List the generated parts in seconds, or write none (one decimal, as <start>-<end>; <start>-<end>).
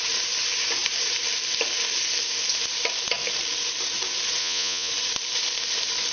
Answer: 4.4-4.9